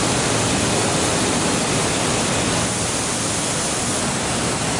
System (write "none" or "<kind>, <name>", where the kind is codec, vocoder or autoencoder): none